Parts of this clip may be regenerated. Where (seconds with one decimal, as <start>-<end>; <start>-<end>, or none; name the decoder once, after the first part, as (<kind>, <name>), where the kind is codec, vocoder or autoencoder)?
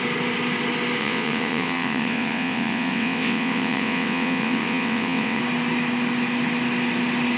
1.0-5.4 (vocoder, WaveNeXt)